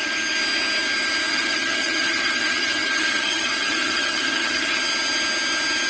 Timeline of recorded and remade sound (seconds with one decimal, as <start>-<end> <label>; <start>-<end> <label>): 0.0-1.3 recorded; 1.3-4.8 remade; 4.8-5.9 recorded